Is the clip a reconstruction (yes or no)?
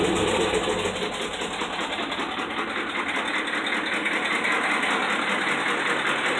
no